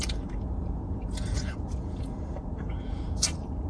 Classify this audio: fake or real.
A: fake